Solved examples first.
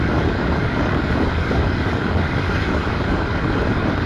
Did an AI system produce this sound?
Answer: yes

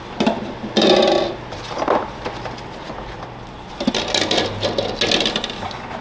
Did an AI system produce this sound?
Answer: no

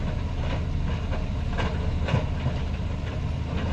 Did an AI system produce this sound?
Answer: no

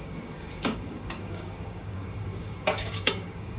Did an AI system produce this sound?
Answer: yes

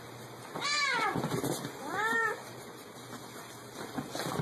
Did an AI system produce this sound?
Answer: no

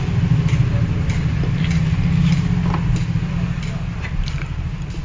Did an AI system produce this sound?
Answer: no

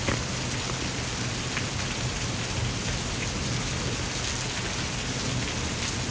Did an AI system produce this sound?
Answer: no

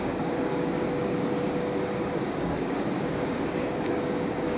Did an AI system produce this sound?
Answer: yes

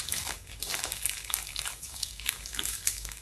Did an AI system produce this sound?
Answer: yes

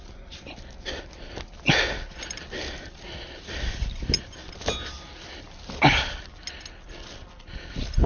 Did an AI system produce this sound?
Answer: no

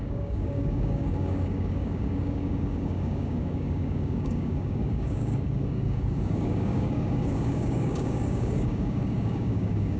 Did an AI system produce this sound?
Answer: yes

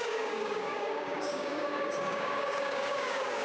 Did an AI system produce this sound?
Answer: yes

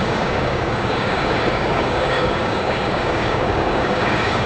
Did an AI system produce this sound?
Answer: yes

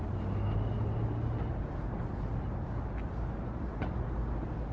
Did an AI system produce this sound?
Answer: no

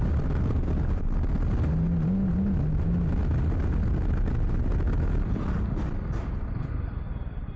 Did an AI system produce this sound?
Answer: no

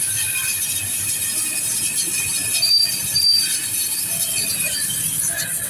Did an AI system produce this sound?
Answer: no